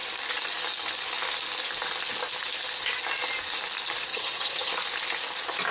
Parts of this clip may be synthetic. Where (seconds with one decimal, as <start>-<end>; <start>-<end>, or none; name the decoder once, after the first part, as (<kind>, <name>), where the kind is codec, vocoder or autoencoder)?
4.1-4.7 (vocoder, HiFi-GAN)